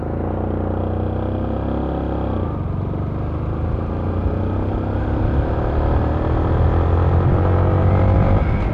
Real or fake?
real